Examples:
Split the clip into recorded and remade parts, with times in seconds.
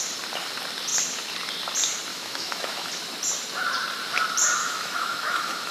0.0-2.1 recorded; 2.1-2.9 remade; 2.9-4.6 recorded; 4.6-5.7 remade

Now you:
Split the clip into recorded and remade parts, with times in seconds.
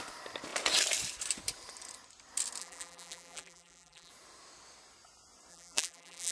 0.0-2.6 recorded; 2.6-4.1 remade; 4.1-5.5 recorded; 5.5-6.3 remade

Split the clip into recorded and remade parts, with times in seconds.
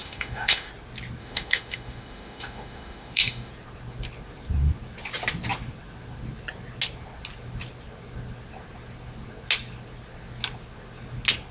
0.0-0.7 remade; 0.7-1.2 recorded; 1.2-3.5 remade; 3.5-11.5 recorded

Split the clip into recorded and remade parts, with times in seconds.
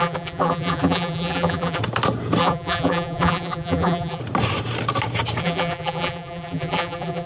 0.0-1.8 remade; 1.8-2.4 recorded; 2.4-4.2 remade; 4.2-5.4 recorded; 5.4-7.3 remade